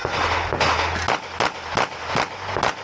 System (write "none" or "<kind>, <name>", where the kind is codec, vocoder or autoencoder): none